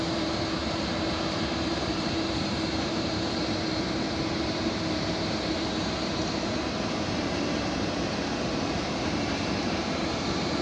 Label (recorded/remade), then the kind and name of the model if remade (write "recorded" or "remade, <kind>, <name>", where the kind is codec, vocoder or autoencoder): remade, vocoder, BigVGAN v2